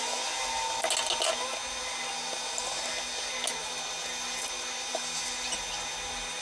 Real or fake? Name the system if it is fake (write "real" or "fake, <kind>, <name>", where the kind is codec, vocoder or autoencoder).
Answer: real